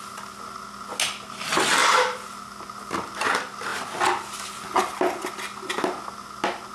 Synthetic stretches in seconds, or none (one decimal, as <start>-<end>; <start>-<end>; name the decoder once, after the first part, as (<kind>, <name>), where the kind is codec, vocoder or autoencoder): none